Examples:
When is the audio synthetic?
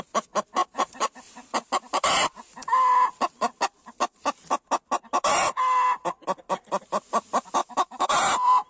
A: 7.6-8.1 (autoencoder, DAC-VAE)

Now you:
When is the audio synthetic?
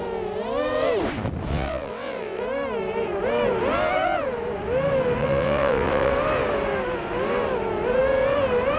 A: 1.5-2.4 (vocoder, WaveNeXt); 5.2-6.1